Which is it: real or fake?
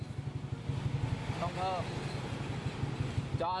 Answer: real